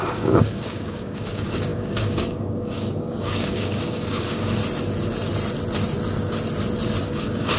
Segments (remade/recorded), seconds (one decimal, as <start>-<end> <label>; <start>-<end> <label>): 0.0-4.6 remade; 4.6-7.0 recorded; 7.0-7.6 remade